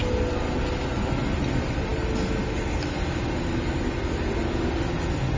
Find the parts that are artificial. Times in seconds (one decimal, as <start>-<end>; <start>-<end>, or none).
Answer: none